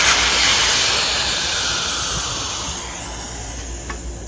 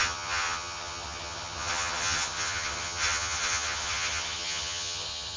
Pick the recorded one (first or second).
first